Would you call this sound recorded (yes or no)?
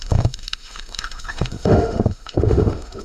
no